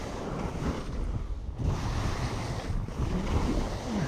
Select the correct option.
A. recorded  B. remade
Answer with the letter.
A